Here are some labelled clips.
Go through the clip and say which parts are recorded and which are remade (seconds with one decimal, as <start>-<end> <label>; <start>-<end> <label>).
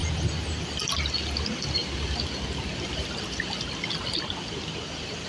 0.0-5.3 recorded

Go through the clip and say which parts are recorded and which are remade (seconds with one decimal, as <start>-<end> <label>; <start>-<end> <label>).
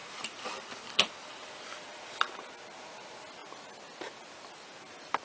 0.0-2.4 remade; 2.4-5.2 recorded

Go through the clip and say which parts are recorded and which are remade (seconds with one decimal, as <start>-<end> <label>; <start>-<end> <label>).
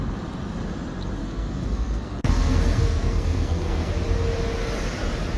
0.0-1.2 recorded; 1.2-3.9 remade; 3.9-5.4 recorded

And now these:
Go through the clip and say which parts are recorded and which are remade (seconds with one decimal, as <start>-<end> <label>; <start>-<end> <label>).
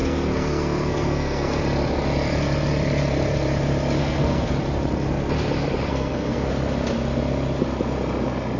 0.0-1.6 remade; 1.6-4.0 recorded; 4.0-4.5 remade; 4.5-5.9 recorded; 5.9-6.5 remade; 6.5-8.6 recorded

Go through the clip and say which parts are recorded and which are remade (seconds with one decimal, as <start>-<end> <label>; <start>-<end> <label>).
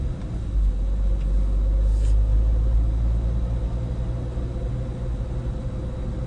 0.0-6.3 recorded